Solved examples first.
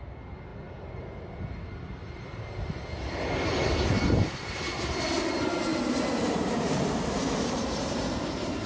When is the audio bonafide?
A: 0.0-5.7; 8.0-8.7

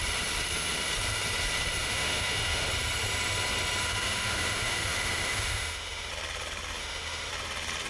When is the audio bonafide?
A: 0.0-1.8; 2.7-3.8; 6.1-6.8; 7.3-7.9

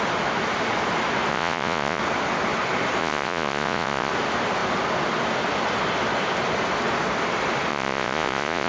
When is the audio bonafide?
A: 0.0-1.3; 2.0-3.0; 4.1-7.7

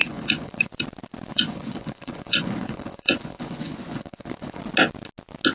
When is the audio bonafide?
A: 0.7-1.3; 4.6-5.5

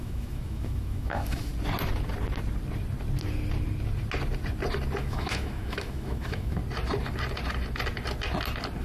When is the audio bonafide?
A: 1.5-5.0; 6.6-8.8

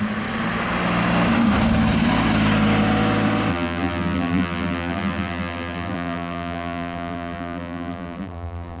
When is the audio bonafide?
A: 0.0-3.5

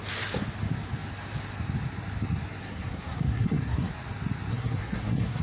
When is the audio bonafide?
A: 0.0-2.6; 3.9-4.5